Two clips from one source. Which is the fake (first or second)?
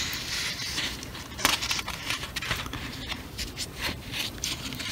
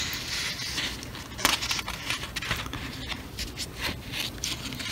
first